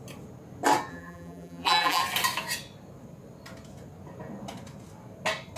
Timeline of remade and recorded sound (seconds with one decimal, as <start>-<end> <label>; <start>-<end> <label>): 0.0-0.9 recorded; 0.9-2.0 remade; 2.0-5.6 recorded